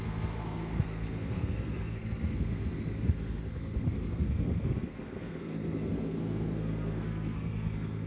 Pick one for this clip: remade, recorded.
remade